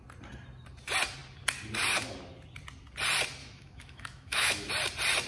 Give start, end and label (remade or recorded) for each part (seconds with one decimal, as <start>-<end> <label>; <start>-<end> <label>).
0.0-3.4 recorded; 3.4-4.7 remade; 4.7-5.3 recorded